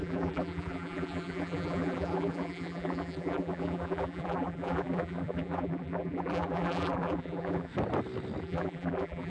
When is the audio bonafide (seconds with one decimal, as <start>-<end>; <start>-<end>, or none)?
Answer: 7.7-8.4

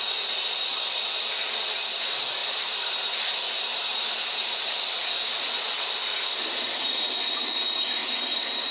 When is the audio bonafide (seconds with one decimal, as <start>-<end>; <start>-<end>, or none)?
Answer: 0.0-2.4; 5.1-8.7

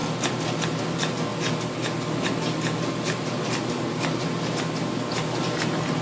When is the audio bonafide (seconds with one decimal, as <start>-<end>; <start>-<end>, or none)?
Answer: 0.0-6.0

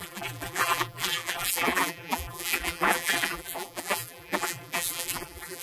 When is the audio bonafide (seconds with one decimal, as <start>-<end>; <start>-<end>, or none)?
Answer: none

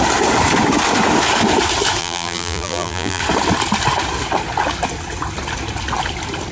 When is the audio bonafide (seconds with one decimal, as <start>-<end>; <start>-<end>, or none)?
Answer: 0.0-2.0; 3.2-6.5